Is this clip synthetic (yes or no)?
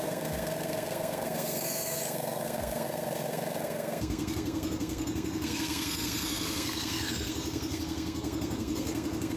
yes